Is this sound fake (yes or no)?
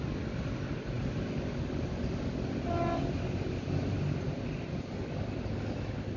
no